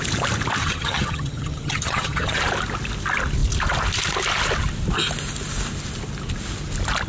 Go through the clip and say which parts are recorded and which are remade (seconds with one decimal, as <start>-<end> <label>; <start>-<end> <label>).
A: 0.0-0.6 recorded; 0.6-2.4 remade; 2.4-7.1 recorded